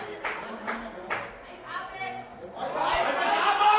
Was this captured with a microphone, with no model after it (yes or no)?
yes